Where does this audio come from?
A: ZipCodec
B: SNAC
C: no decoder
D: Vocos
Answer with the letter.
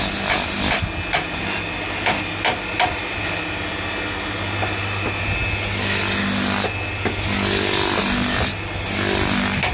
C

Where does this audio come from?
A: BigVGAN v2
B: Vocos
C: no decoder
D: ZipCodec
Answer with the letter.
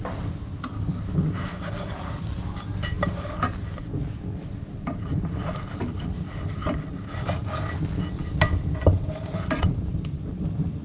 C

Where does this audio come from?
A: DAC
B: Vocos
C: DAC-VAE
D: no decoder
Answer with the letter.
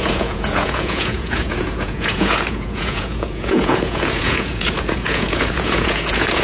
B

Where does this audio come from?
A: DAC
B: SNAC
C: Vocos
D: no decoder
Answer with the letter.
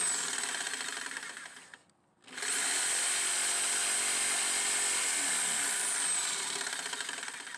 D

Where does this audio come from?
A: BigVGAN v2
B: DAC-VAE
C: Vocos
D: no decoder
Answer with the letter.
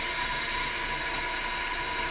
D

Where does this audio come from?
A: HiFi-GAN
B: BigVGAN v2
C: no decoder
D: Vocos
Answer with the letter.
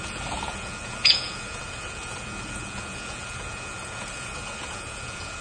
D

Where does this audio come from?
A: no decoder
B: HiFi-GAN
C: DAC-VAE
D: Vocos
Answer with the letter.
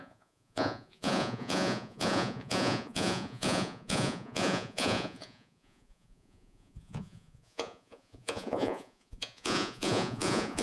D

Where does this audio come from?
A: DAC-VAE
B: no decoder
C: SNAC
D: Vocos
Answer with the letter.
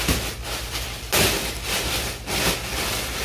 B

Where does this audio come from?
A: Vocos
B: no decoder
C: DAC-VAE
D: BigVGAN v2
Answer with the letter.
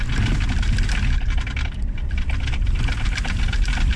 B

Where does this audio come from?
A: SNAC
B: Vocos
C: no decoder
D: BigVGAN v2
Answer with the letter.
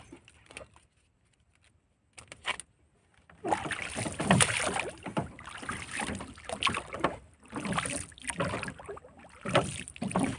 C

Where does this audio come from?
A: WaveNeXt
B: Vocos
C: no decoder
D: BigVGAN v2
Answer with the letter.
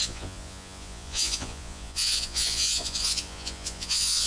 B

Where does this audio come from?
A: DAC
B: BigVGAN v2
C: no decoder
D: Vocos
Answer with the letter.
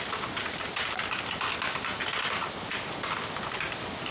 C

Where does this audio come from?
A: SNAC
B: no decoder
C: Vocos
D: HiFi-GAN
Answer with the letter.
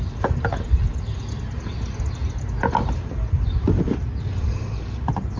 B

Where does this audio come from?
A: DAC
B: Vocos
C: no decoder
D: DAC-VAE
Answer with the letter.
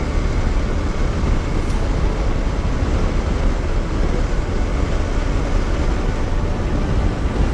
C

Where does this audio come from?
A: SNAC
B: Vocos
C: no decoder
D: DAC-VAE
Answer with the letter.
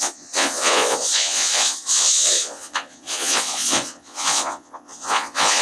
B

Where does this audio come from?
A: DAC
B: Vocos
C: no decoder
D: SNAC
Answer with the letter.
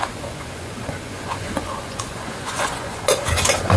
B